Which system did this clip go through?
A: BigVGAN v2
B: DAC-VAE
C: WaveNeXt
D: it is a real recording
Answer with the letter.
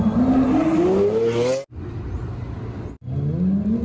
D